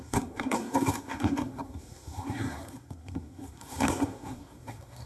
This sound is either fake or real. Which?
fake